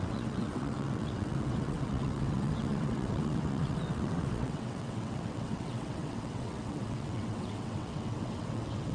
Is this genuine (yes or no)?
no